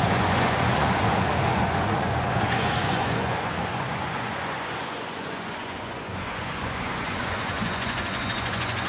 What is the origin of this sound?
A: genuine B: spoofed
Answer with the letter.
B